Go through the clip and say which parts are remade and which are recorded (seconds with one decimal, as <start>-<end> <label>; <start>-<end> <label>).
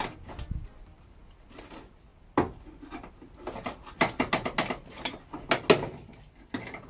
0.0-6.9 recorded